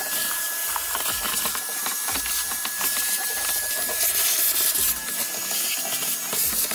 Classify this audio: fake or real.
real